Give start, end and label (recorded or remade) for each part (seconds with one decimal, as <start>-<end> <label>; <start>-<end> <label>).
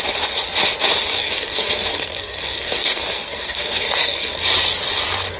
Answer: 0.0-1.2 recorded; 1.2-4.4 remade; 4.4-5.4 recorded